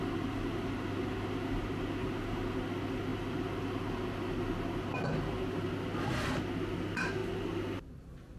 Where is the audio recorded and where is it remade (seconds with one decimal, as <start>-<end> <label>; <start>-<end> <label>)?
0.0-8.4 recorded